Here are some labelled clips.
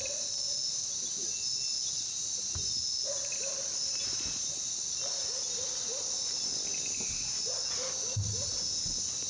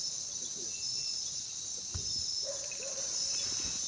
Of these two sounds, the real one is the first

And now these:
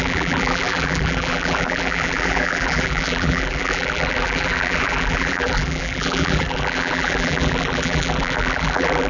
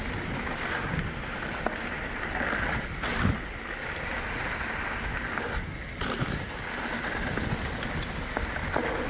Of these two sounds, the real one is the second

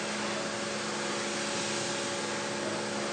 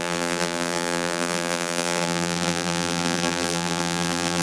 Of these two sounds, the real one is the first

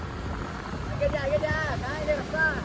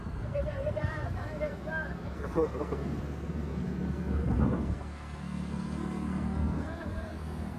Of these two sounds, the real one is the first